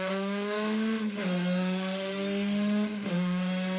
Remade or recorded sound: remade